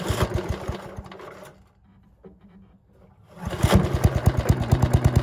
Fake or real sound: real